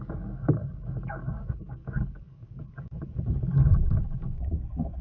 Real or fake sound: fake